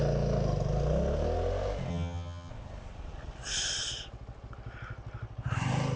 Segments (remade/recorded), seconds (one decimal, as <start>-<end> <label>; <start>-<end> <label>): 0.0-1.9 recorded; 1.9-2.5 remade; 2.5-6.0 recorded